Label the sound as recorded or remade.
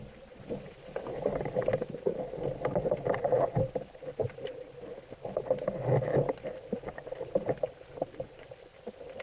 recorded